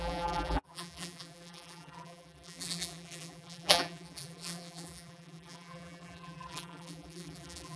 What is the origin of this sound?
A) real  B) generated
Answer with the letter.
B